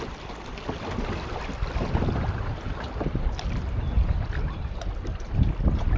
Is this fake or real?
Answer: real